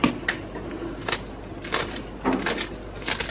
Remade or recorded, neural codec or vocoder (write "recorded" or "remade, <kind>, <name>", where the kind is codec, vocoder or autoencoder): recorded